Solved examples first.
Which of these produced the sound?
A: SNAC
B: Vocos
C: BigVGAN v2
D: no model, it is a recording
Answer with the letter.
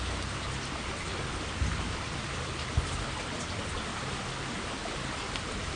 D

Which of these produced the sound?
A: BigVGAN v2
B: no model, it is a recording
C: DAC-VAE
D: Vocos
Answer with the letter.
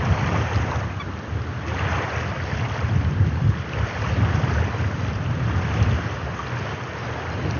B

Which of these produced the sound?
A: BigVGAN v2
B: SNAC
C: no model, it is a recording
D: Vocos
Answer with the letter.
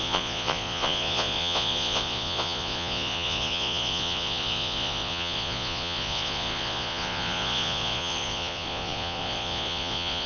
D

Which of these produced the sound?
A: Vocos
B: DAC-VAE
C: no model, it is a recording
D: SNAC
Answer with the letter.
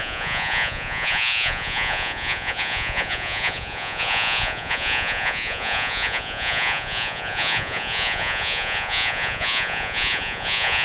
A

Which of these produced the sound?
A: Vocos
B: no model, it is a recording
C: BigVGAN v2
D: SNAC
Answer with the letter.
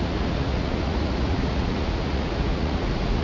A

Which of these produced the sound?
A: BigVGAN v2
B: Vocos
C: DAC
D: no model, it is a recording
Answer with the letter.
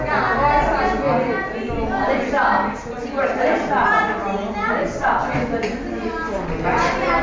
D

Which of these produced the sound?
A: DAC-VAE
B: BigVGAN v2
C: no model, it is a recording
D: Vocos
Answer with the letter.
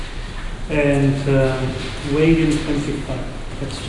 C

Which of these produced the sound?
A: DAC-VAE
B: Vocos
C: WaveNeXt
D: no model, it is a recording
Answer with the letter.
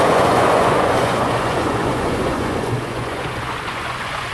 B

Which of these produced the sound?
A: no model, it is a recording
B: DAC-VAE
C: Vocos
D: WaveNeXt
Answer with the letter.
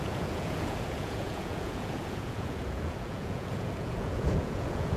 C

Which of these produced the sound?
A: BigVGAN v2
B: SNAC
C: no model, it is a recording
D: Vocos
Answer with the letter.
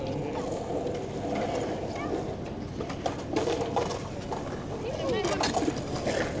C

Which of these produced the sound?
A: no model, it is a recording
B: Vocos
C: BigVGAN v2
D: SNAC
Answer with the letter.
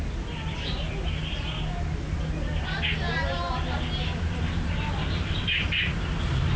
A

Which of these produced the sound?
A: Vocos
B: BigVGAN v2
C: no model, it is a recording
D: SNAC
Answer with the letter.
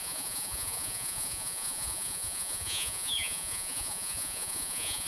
A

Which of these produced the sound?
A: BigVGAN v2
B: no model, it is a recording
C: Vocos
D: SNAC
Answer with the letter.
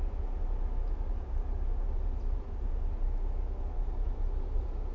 B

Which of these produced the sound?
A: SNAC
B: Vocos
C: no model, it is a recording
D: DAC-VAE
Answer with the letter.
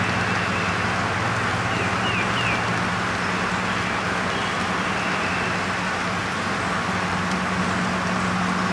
C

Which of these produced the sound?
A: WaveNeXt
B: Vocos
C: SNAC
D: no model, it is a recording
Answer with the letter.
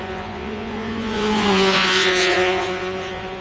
B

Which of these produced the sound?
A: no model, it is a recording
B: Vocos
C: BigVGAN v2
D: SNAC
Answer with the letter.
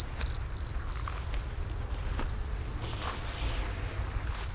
A